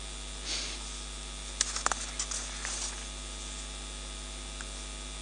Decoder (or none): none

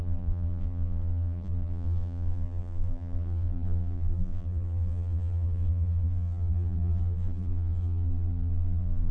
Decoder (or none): vocoder, BigVGAN v2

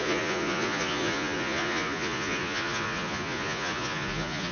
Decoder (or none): vocoder, Vocos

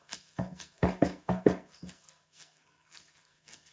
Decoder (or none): codec, SNAC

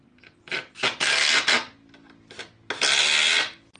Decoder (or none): none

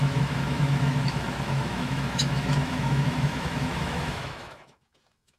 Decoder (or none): autoencoder, DAC-VAE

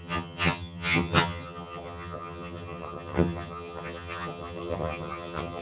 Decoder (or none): vocoder, HiFi-GAN